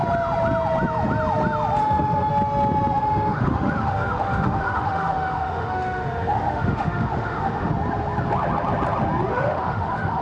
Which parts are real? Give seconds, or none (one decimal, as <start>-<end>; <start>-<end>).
0.0-1.8; 2.3-3.0; 7.7-9.3